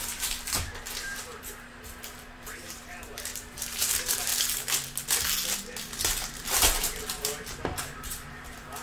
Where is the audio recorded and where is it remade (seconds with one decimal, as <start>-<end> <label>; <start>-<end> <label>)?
0.0-4.3 remade; 4.3-6.2 recorded; 6.2-8.8 remade